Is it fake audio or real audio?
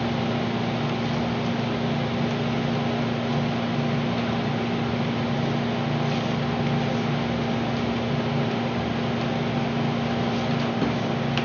real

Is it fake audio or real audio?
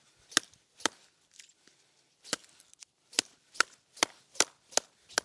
real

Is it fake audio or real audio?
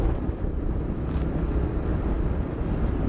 real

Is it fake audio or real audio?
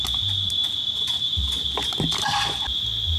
real